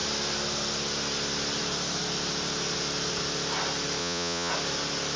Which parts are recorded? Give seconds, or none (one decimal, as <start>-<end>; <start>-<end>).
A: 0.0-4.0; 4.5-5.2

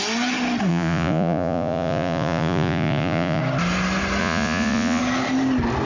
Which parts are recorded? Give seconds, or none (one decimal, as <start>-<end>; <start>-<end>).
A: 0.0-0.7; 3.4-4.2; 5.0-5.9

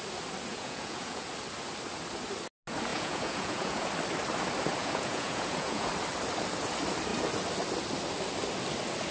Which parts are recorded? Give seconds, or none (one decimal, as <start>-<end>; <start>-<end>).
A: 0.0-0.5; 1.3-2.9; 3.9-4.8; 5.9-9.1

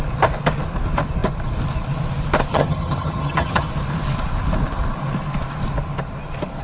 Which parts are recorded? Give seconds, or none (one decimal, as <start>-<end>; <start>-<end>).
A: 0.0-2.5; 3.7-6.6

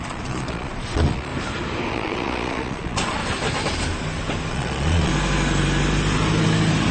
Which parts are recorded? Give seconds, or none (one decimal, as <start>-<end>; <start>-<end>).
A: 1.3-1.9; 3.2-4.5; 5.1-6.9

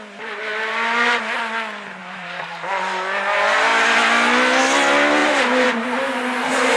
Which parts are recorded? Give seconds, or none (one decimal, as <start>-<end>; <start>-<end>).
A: 0.0-2.0; 2.7-5.2

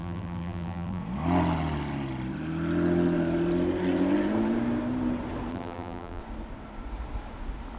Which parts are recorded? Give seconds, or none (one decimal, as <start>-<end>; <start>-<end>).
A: 1.0-5.5; 6.2-7.8

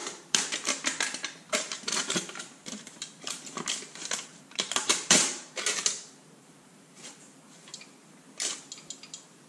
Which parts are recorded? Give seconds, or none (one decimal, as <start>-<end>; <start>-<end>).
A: 7.7-9.5